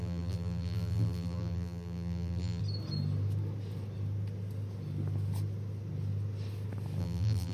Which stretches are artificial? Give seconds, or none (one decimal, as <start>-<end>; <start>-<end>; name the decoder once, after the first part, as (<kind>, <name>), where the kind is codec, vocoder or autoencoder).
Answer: 0.0-2.6 (vocoder, BigVGAN v2); 7.0-7.5